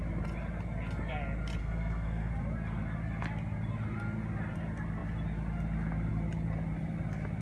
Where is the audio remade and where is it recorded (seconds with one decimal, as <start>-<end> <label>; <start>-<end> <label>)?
0.0-1.6 recorded; 1.6-2.3 remade; 2.3-7.4 recorded